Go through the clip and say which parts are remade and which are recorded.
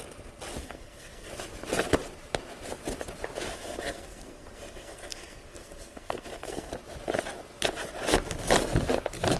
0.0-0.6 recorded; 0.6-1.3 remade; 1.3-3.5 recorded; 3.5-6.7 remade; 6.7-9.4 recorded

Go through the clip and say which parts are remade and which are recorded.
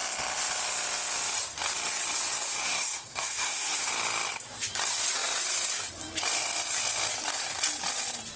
0.0-2.6 recorded; 2.6-3.9 remade; 3.9-8.4 recorded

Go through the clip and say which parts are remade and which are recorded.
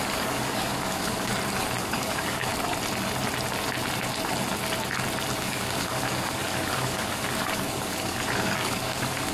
0.0-1.3 remade; 1.3-1.8 recorded; 1.8-2.5 remade; 2.5-5.4 recorded; 5.4-9.3 remade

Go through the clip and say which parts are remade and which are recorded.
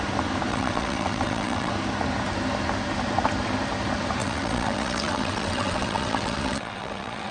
0.0-0.5 recorded; 0.5-1.7 remade; 1.7-4.2 recorded; 4.2-7.3 remade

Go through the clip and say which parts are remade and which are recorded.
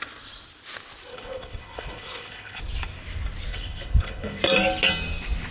0.0-1.1 recorded; 1.1-2.6 remade; 2.6-3.5 recorded; 3.5-4.4 remade; 4.4-5.5 recorded